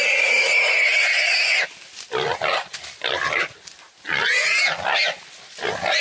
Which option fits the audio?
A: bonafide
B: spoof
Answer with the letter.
A